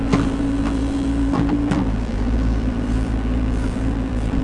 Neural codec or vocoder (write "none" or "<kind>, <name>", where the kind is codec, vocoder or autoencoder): vocoder, BigVGAN v2